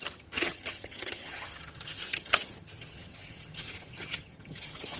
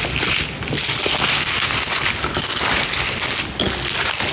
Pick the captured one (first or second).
second